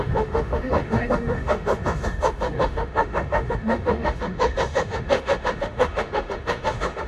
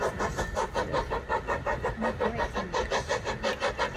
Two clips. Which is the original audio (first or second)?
second